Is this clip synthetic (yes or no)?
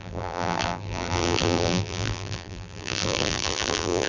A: yes